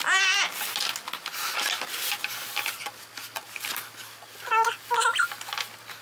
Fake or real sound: real